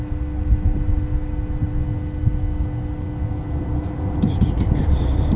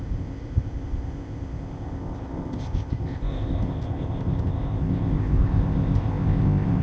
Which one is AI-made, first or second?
second